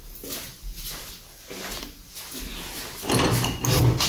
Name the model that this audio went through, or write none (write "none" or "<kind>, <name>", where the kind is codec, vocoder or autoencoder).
none